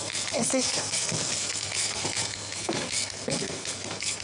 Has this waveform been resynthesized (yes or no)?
yes